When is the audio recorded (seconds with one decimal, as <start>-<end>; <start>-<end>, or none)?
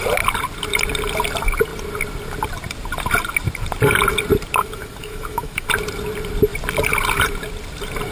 0.0-4.6; 5.7-8.1